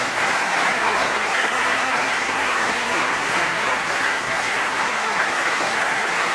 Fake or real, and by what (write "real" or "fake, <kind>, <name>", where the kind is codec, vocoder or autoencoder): fake, codec, SNAC